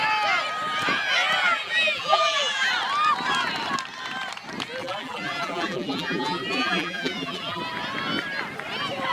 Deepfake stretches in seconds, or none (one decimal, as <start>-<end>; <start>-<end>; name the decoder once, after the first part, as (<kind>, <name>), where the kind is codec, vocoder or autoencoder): 1.4-2.7 (vocoder, BigVGAN v2); 4.8-7.6